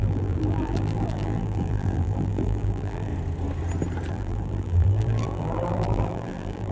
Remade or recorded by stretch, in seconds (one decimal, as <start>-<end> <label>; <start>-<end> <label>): 0.0-3.1 remade; 3.1-4.1 recorded; 4.1-6.7 remade